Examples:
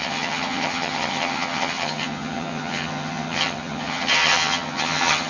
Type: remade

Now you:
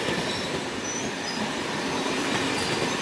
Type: recorded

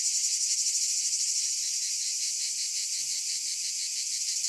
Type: recorded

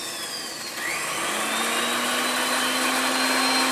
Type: recorded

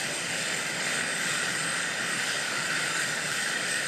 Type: remade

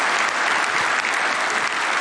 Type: recorded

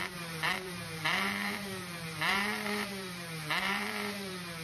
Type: remade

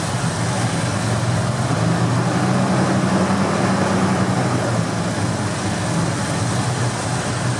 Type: recorded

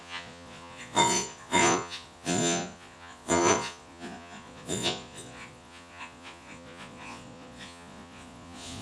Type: remade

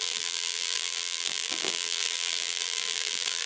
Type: remade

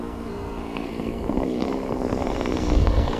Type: remade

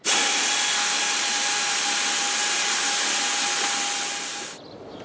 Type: recorded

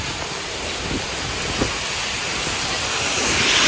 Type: recorded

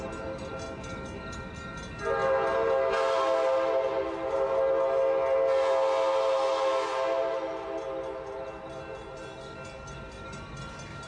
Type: recorded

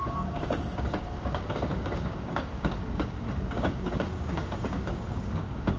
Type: remade